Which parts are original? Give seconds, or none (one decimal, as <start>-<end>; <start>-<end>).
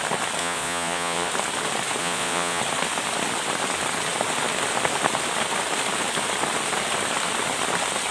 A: 0.0-0.4; 1.3-2.0; 2.6-8.1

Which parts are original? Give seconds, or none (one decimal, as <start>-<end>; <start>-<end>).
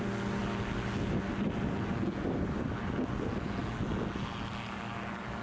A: 0.0-5.4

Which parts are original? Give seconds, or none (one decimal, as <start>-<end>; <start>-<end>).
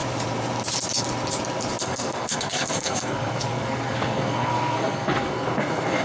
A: 0.0-1.8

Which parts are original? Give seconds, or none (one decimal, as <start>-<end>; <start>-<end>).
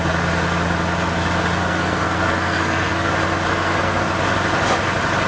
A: 0.0-1.6; 3.1-3.5; 4.0-5.3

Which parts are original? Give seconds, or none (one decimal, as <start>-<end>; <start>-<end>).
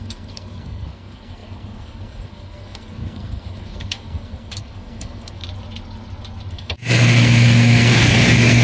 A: 5.4-6.5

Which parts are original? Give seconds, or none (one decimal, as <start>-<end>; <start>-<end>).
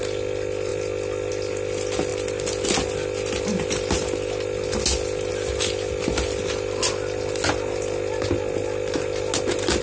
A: 0.0-9.8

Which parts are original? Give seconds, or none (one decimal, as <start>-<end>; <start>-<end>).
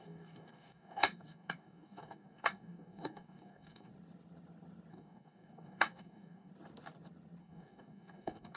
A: 3.9-4.9; 6.5-7.4